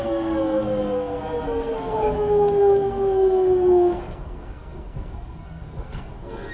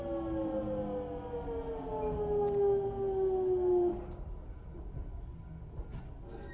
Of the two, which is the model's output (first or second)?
first